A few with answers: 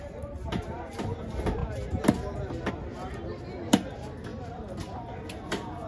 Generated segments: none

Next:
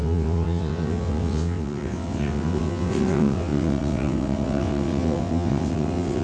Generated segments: 0.0-6.2 (vocoder, WaveNeXt)

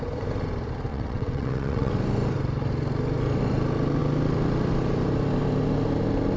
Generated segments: 0.9-1.9 (vocoder, WaveNeXt)

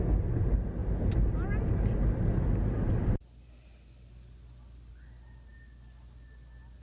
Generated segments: none

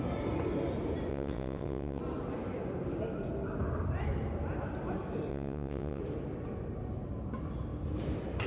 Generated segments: 1.1-2.0 (vocoder, WaveNeXt); 5.3-6.0